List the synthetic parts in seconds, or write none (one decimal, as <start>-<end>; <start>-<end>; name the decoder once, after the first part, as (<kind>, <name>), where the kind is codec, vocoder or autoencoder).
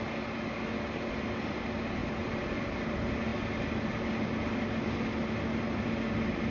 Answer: none